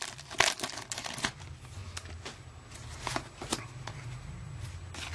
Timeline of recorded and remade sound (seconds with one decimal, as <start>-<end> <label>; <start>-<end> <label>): 0.0-5.1 recorded